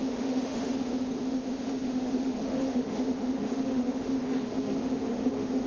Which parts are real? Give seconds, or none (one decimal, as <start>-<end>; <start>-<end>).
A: none